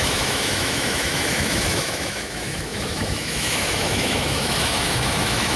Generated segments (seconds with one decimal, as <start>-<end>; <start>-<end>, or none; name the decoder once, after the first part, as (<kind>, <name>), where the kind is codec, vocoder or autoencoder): 0.0-5.6 (autoencoder, DAC-VAE)